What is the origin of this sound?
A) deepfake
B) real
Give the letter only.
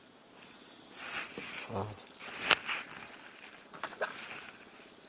B